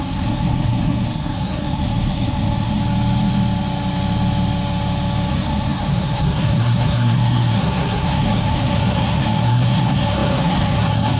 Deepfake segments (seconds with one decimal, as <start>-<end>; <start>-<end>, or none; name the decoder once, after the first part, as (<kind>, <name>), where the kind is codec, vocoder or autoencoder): 0.0-2.8 (codec, SNAC); 5.3-11.2